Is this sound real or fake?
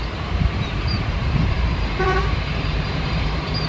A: fake